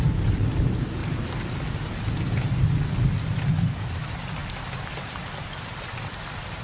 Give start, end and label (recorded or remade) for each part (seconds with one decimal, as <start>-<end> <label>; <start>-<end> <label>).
0.0-1.0 remade; 1.0-3.5 recorded; 3.5-4.4 remade; 4.4-5.4 recorded; 5.4-6.6 remade